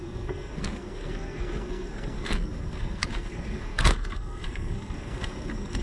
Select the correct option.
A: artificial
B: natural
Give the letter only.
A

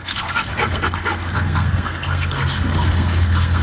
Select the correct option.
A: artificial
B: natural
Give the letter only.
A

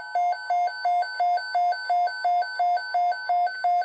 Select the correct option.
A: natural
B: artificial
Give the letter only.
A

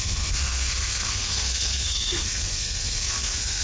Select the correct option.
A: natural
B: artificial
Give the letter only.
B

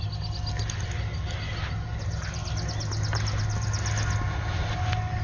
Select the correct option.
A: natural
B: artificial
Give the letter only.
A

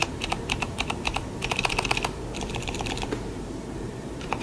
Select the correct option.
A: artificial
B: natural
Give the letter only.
A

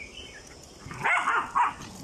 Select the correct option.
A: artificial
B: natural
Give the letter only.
B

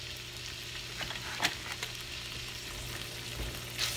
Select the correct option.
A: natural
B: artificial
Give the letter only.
A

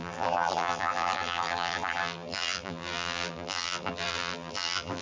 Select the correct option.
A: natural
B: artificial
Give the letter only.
B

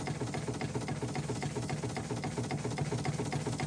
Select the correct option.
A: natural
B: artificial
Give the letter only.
A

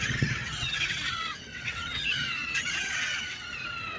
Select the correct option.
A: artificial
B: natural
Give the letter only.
A